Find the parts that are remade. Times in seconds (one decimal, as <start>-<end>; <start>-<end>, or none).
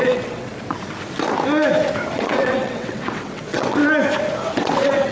0.0-0.5; 2.1-3.8; 4.4-5.1